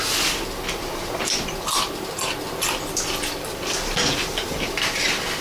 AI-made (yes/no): no